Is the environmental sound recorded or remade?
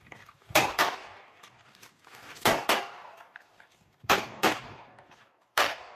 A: remade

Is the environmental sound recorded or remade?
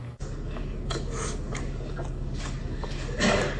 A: remade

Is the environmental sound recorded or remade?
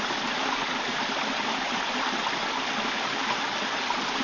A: recorded